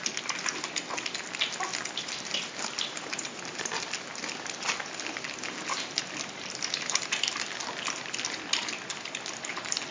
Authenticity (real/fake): real